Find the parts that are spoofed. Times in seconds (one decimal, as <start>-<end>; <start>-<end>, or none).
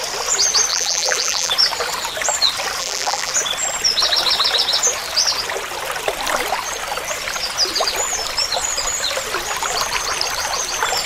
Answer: 0.7-1.5; 2.8-3.3